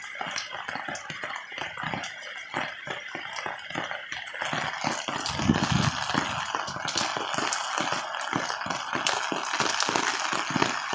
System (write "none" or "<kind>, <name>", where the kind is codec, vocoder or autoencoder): none